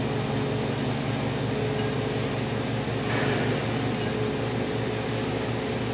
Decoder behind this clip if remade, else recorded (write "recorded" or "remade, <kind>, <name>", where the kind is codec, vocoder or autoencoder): recorded